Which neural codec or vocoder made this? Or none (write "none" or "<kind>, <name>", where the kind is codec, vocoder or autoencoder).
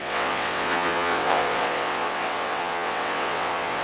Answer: vocoder, WaveNeXt